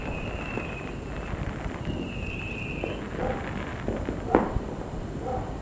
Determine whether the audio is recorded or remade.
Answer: remade